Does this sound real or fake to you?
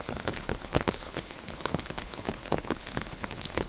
fake